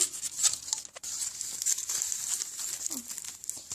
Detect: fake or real real